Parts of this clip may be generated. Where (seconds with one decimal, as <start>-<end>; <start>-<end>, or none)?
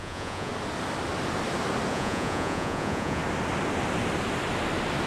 0.0-0.5; 1.9-3.2